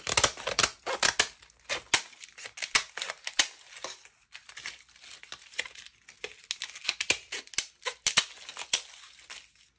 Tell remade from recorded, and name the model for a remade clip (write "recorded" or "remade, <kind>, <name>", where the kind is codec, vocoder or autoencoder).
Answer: recorded